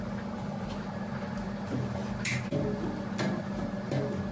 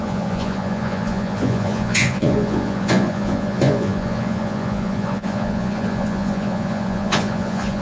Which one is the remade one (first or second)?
second